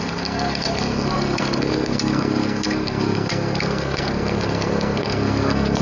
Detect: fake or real fake